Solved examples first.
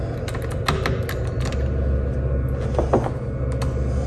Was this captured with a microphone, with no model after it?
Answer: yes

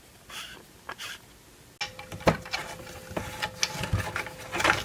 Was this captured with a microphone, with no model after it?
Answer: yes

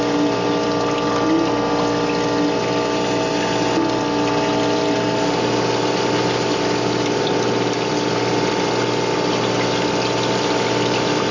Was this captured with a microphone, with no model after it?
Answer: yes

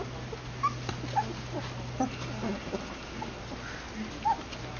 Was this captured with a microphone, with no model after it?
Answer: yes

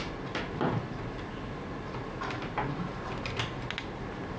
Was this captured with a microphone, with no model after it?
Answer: yes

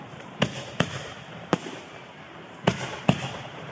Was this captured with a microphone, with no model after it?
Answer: no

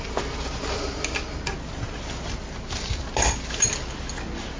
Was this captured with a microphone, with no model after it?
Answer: yes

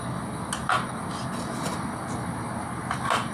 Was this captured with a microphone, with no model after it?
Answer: yes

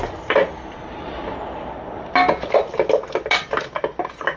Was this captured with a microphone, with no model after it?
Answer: yes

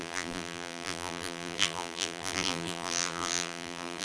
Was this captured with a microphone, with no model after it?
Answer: no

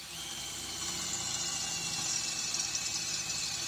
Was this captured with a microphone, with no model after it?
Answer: yes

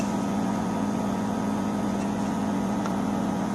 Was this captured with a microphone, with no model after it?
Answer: no